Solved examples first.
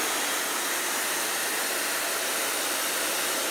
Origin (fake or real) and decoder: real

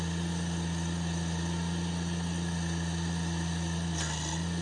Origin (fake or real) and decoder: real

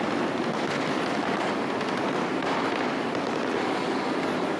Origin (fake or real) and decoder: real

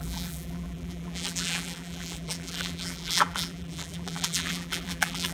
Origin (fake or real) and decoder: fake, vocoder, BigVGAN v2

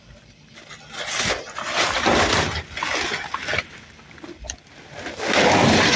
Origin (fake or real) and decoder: real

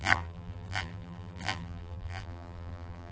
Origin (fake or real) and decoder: fake, vocoder, BigVGAN v2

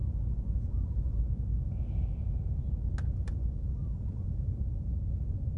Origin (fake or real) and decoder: real